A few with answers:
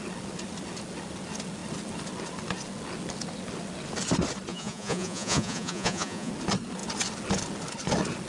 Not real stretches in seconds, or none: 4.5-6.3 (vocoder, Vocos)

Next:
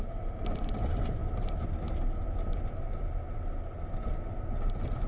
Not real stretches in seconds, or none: none

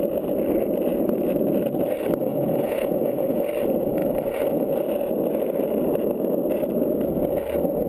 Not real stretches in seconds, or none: 2.3-3.4 (vocoder, Vocos)

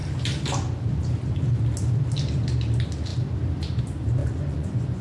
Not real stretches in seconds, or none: 4.2-5.0 (vocoder, Vocos)